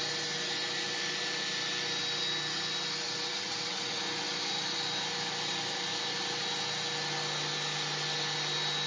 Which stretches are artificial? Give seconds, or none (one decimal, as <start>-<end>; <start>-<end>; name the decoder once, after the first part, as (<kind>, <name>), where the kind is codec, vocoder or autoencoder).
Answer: 3.3-4.0 (vocoder, WaveNeXt)

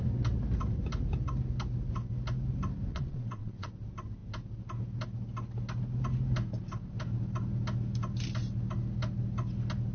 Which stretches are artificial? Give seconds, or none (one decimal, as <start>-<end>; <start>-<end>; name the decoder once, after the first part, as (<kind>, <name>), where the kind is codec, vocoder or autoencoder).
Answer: 2.9-3.7 (vocoder, WaveNeXt)

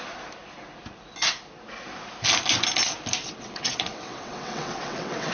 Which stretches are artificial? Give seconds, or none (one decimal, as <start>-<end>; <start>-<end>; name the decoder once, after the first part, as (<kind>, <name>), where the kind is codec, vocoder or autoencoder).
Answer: 3.2-5.3 (vocoder, WaveNeXt)

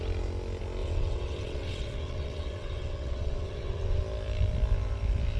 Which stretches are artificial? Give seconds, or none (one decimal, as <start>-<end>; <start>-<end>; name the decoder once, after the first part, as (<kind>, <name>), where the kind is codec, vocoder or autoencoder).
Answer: 0.8-4.0 (vocoder, WaveNeXt)

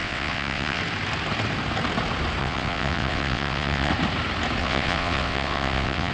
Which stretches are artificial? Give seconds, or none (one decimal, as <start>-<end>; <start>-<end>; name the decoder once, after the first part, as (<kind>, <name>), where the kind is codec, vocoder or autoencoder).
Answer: 0.0-0.8 (vocoder, WaveNeXt); 2.4-3.9; 4.6-6.1